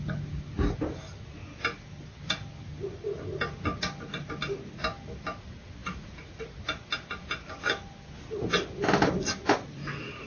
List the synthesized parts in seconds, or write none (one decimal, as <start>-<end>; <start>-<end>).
5.8-6.6